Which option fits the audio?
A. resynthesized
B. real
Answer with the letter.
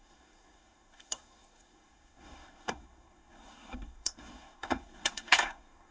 A